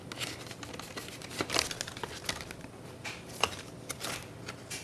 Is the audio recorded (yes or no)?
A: yes